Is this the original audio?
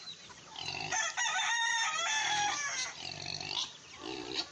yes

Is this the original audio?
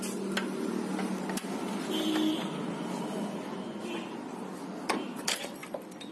yes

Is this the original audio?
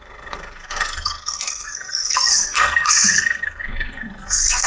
no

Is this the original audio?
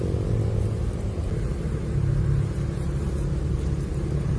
yes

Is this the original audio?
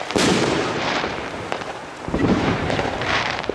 no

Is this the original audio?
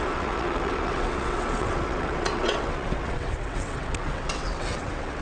no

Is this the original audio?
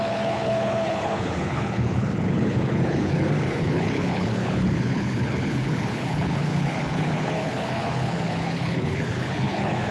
no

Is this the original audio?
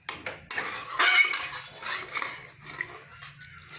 yes